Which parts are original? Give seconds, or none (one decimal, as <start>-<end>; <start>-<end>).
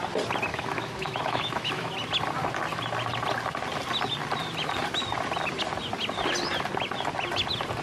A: 0.0-0.5; 1.9-7.8